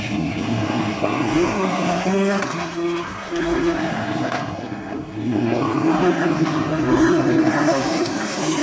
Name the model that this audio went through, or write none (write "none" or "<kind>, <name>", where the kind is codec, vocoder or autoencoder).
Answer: codec, SNAC